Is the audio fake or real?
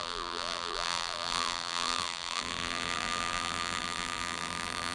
fake